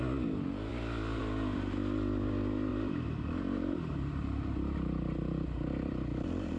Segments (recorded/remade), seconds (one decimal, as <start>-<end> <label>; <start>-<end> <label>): 0.0-2.7 recorded; 2.7-6.6 remade